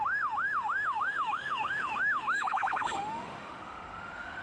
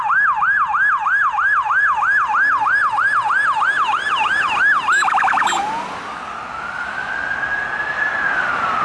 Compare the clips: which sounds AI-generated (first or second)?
first